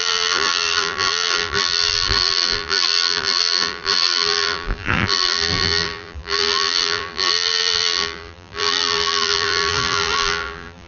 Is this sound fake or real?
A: fake